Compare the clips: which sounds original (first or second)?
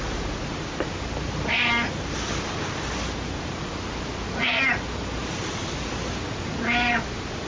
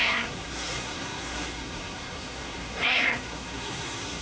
first